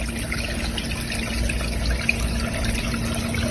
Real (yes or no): yes